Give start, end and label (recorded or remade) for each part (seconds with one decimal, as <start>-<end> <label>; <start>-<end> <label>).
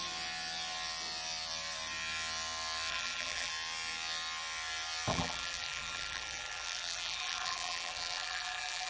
0.0-2.9 recorded; 2.9-3.5 remade; 3.5-5.1 recorded; 5.1-8.9 remade